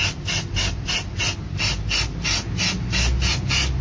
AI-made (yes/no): no